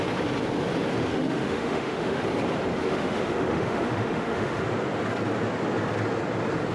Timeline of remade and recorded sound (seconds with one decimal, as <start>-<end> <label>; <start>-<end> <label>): 0.0-1.1 recorded; 1.1-2.2 remade; 2.2-2.8 recorded; 2.8-4.6 remade; 4.6-6.7 recorded